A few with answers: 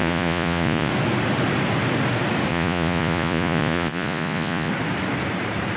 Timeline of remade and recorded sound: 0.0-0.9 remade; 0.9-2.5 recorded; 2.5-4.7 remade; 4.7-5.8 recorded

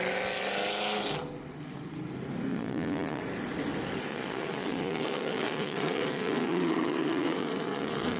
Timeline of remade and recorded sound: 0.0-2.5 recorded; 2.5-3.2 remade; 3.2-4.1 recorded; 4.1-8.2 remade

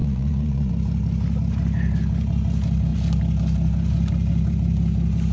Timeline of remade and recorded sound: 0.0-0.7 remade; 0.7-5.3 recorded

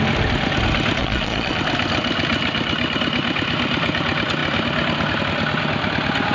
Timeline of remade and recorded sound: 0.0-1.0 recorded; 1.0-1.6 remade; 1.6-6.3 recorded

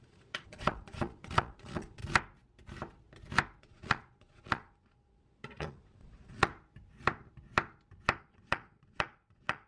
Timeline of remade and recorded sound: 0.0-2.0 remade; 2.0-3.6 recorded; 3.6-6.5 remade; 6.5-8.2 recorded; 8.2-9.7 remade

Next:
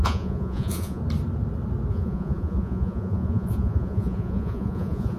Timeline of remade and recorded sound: 0.0-1.0 remade; 1.0-1.9 recorded; 1.9-5.2 remade